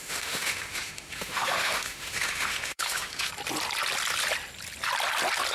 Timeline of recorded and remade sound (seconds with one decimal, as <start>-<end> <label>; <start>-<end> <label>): 0.0-3.3 remade; 3.3-5.5 recorded